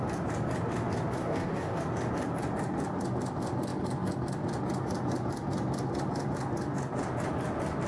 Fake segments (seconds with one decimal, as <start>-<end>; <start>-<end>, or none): 1.2-1.8